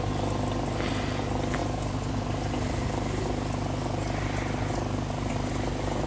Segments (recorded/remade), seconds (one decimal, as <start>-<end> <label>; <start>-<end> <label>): 0.0-6.1 recorded